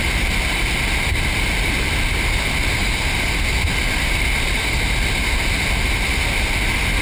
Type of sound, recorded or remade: recorded